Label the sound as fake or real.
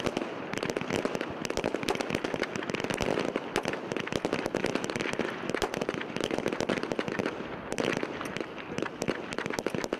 real